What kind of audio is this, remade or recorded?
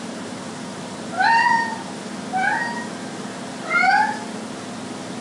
recorded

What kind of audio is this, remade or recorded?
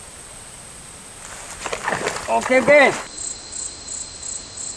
recorded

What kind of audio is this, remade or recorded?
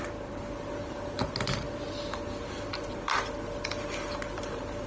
recorded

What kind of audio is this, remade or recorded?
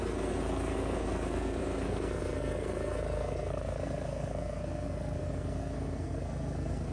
remade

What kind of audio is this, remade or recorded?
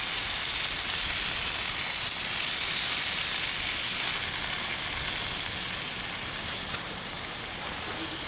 recorded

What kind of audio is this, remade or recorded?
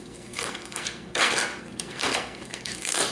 remade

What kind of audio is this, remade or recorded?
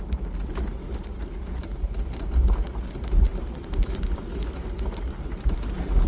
recorded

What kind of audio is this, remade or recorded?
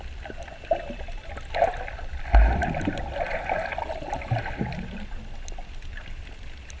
recorded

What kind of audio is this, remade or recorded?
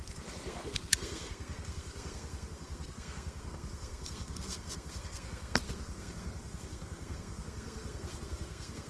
remade